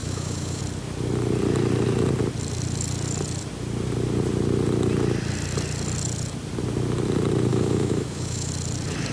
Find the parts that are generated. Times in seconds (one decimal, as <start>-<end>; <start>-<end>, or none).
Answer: 0.0-0.6; 7.5-8.5